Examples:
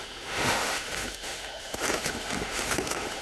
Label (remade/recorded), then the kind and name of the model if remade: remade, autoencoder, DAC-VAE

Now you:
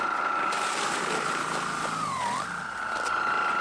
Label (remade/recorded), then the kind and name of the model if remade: recorded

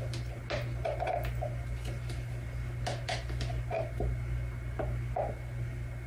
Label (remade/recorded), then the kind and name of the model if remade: recorded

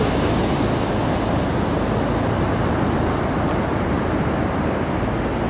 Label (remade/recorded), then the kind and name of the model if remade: recorded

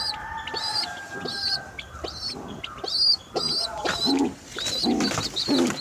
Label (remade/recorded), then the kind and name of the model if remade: recorded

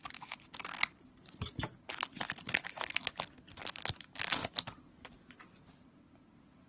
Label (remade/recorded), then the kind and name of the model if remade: recorded